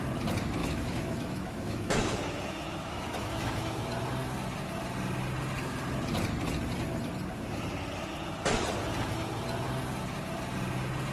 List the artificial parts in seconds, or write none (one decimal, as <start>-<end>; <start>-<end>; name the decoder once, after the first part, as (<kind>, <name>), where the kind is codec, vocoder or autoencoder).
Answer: 0.6-3.8 (autoencoder, DAC-VAE)